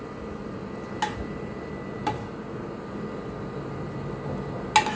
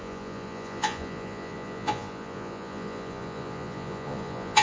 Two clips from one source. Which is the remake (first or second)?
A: second